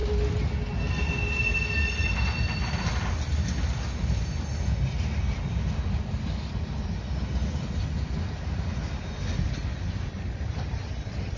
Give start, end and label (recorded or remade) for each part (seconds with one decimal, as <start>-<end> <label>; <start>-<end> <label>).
0.0-11.4 recorded